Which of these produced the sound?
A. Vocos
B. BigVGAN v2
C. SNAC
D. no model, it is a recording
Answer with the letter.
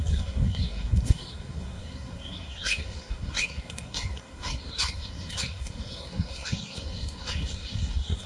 C